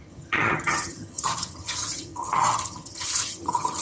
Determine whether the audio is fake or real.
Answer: fake